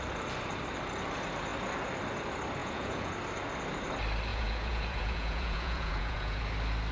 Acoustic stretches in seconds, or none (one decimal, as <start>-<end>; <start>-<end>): 0.0-2.6; 3.1-4.3; 6.4-6.9